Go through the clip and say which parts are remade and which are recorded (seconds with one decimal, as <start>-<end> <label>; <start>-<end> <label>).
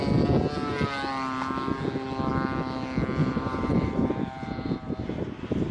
0.0-3.2 recorded; 3.2-5.2 remade; 5.2-5.7 recorded